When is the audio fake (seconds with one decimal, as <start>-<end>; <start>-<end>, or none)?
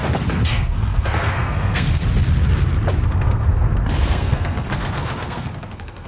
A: 0.5-2.0; 3.1-6.1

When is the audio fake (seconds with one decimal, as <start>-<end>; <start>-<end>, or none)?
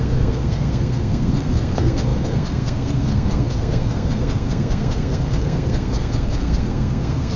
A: 0.0-7.4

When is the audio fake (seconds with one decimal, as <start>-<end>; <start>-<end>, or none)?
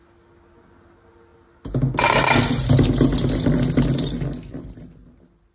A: none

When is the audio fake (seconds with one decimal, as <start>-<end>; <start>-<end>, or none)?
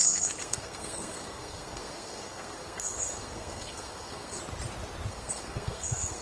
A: 0.0-4.4; 5.1-6.2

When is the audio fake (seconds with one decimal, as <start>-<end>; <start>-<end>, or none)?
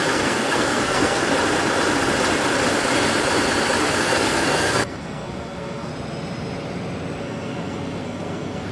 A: 0.0-1.2; 3.8-5.9; 7.2-8.7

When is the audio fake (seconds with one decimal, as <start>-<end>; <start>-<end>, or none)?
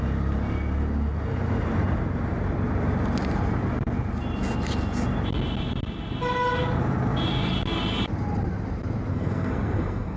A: 9.1-10.2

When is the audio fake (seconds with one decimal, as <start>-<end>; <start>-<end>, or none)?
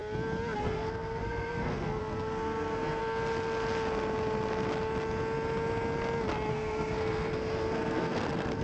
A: 0.6-3.0; 6.5-8.6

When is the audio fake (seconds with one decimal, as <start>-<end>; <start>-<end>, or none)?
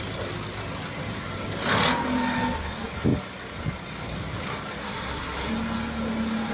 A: 4.8-5.5